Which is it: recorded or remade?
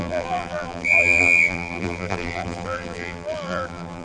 remade